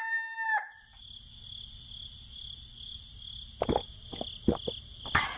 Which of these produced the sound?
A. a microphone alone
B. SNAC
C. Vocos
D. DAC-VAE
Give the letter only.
A